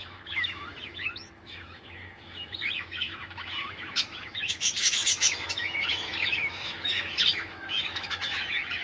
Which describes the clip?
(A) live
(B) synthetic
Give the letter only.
B